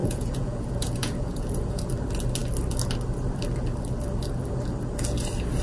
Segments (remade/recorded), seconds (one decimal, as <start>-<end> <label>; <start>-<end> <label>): 0.0-1.9 remade; 1.9-5.6 recorded